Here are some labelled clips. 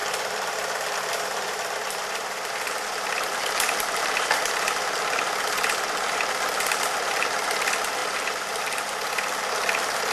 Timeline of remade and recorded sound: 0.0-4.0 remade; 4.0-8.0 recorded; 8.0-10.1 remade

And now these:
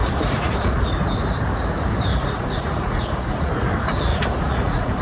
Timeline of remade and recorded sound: 0.0-0.9 remade; 0.9-2.1 recorded; 2.1-3.5 remade; 3.5-4.1 recorded; 4.1-5.0 remade

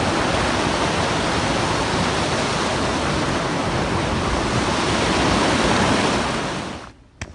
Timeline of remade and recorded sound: 0.0-7.3 recorded

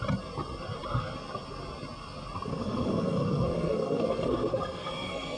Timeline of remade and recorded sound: 0.0-2.5 recorded; 2.5-5.4 remade